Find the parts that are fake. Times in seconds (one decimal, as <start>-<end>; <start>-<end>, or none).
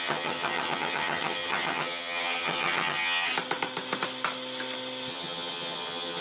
0.0-3.3; 5.1-6.2